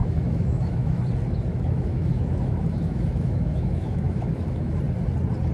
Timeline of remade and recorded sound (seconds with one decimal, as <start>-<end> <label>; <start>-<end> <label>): 0.0-1.0 remade; 1.0-1.5 recorded; 1.5-4.8 remade; 4.8-5.5 recorded